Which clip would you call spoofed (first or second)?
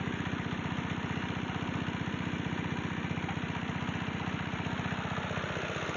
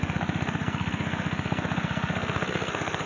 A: second